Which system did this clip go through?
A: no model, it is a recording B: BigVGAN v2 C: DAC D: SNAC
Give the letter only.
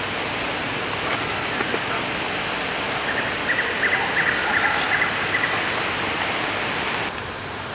A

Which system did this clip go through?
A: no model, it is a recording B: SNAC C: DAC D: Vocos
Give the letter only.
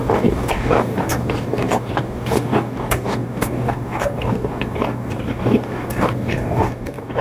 C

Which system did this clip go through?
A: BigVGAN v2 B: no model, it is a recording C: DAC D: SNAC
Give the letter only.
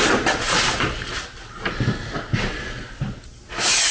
B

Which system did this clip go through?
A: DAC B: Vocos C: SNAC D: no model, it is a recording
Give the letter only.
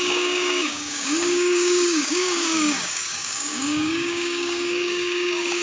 A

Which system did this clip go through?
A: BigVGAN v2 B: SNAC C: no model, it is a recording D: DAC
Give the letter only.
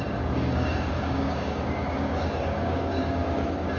D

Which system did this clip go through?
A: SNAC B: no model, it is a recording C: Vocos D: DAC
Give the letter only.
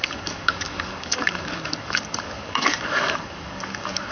D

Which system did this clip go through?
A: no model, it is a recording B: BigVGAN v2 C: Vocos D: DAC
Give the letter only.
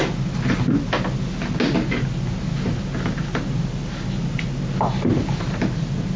A